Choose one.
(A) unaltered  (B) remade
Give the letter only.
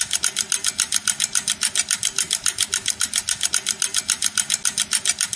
A